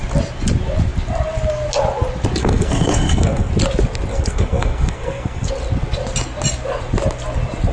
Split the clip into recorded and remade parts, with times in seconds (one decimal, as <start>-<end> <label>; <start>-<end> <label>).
0.0-2.4 recorded; 2.4-3.5 remade; 3.5-4.1 recorded; 4.1-5.5 remade; 5.5-7.7 recorded